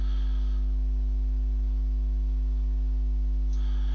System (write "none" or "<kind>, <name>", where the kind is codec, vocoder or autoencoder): none